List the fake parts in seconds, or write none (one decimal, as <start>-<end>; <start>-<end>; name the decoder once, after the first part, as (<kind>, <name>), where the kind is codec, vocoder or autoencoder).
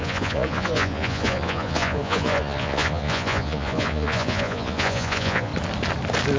0.0-5.5 (vocoder, Vocos)